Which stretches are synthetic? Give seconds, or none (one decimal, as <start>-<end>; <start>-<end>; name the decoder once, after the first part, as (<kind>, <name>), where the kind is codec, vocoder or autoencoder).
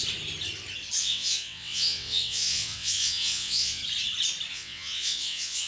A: 1.0-3.8 (vocoder, WaveNeXt); 4.5-5.7